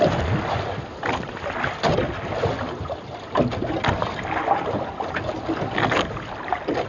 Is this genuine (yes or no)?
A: yes